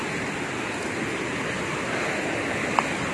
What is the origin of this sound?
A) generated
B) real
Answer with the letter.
B